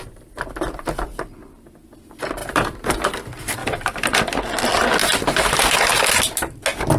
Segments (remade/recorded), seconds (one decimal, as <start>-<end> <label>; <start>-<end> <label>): 0.0-2.4 recorded; 2.4-2.9 remade; 2.9-3.6 recorded; 3.6-4.2 remade; 4.2-5.0 recorded; 5.0-5.9 remade; 5.9-7.0 recorded